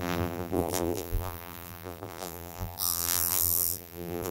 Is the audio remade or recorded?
remade